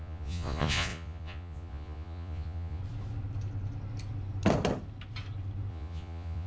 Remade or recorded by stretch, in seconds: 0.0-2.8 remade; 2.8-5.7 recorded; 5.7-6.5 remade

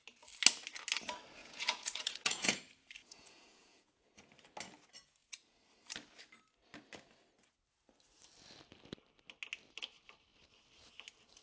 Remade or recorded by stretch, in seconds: 0.0-1.4 recorded; 1.4-2.6 remade; 2.6-3.0 recorded; 3.0-4.3 remade; 4.3-11.4 recorded

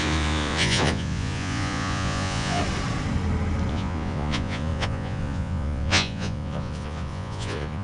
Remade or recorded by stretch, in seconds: 0.0-2.6 remade; 2.6-3.7 recorded; 3.7-7.8 remade